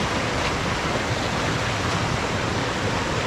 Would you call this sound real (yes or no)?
yes